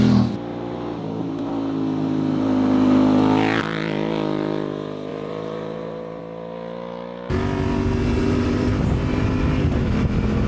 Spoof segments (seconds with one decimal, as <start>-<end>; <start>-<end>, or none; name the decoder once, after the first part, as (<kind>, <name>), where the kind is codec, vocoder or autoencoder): 0.5-1.5 (vocoder, BigVGAN v2); 5.1-6.2